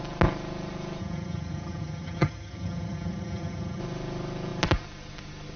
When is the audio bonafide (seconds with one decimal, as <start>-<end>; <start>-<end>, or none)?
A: 0.0-1.0; 3.8-5.6